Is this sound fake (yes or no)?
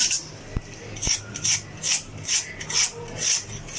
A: no